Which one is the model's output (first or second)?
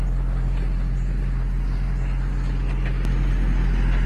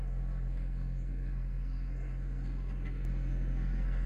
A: second